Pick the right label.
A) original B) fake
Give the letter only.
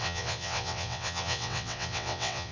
B